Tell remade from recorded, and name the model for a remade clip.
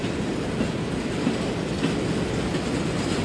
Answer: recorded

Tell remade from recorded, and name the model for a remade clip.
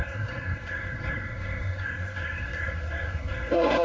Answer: remade, codec, SNAC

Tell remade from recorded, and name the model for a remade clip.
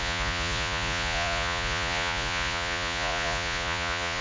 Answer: remade, vocoder, Vocos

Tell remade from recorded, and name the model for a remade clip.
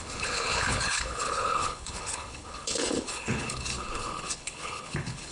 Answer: remade, codec, HILCodec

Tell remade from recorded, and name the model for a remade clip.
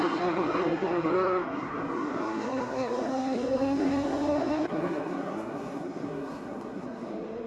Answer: remade, codec, SNAC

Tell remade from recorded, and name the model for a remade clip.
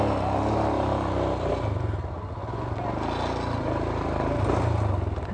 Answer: recorded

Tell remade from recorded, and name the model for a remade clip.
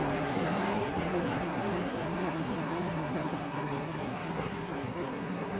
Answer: remade, codec, SNAC